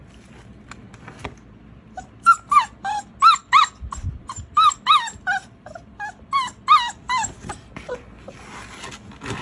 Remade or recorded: recorded